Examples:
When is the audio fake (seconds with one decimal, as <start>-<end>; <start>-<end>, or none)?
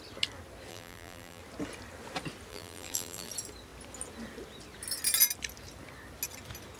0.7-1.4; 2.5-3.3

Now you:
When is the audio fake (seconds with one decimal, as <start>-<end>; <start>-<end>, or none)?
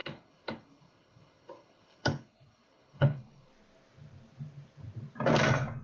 0.0-3.5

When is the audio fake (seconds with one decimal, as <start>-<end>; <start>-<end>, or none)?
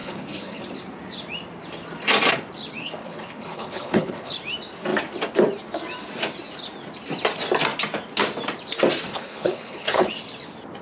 0.0-0.6; 2.8-4.3; 9.1-10.1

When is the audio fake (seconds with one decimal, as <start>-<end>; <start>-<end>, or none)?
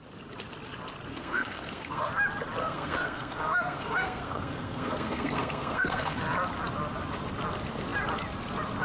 1.1-2.1; 2.6-6.2